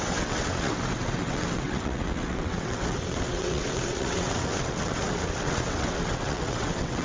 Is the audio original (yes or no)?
no